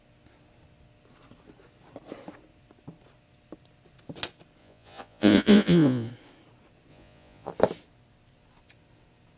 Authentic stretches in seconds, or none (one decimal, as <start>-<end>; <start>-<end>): 0.0-4.6; 6.1-6.9; 7.5-9.4